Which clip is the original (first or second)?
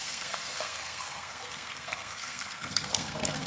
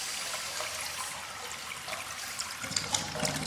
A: second